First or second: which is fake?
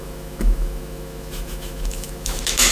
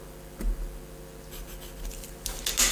first